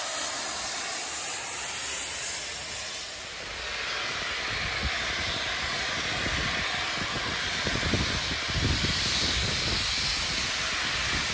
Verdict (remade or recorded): recorded